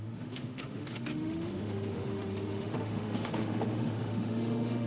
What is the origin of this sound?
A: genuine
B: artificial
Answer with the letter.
B